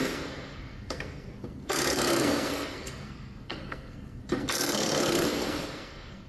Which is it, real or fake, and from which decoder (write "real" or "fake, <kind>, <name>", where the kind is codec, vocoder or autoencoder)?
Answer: fake, codec, SNAC